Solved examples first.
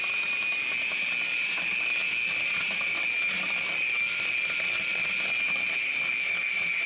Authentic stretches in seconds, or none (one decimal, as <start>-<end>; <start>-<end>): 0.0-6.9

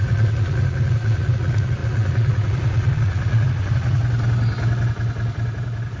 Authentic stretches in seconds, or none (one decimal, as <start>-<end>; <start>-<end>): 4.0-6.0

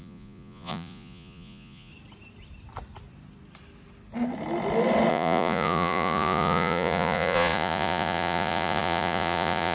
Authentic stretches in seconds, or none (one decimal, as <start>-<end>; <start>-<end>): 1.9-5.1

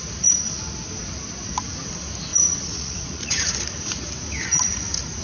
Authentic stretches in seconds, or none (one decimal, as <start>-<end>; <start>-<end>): 0.0-2.3; 3.5-5.2

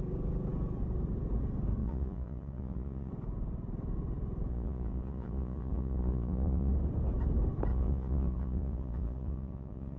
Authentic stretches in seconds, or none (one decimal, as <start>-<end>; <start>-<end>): 0.0-1.8; 3.1-4.5; 6.7-7.7